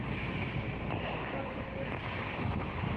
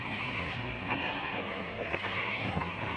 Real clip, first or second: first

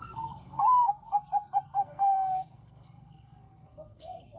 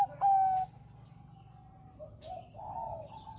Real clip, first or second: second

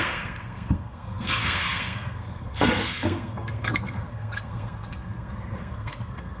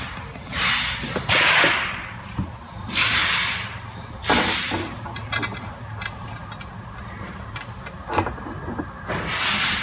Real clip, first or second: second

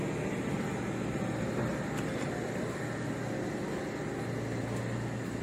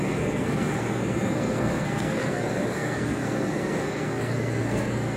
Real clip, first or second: first